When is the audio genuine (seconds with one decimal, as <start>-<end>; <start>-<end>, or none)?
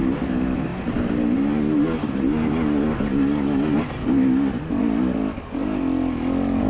0.0-6.7